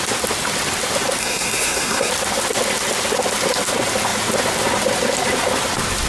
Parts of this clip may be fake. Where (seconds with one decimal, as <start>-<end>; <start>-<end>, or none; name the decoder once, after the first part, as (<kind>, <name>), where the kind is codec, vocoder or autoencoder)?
1.2-2.1 (codec, SNAC)